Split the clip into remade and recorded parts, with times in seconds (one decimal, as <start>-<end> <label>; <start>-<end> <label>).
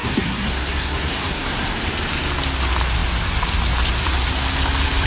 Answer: 0.0-1.7 remade; 1.7-5.1 recorded